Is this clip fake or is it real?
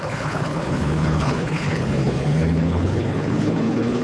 fake